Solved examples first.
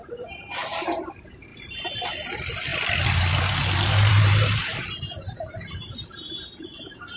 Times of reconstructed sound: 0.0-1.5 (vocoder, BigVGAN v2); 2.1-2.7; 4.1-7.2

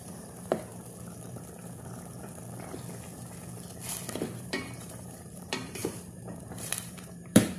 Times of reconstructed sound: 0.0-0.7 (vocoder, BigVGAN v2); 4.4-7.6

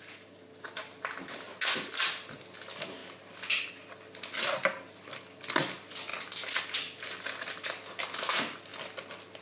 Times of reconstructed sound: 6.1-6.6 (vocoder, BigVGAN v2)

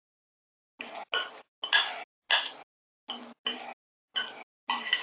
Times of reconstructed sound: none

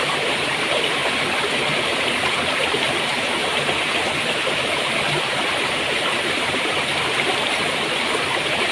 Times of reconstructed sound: 0.0-1.0 (vocoder, BigVGAN v2); 2.0-8.7

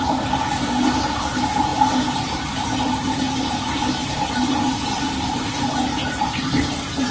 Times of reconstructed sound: 0.0-7.1 (vocoder, BigVGAN v2)

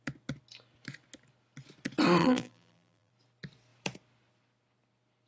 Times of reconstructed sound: 2.2-3.1 (vocoder, BigVGAN v2)